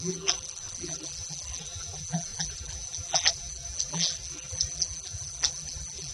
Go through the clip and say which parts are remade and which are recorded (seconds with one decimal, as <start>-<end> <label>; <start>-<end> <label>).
0.0-6.1 remade